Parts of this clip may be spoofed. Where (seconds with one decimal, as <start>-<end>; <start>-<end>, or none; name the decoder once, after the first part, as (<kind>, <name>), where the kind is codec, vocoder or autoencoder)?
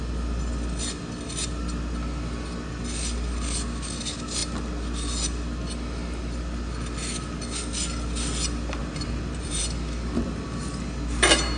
8.8-9.6 (vocoder, BigVGAN v2)